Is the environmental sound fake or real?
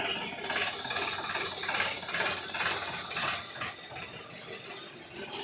real